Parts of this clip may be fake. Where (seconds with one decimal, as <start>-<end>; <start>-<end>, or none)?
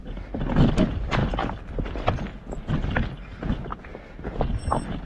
none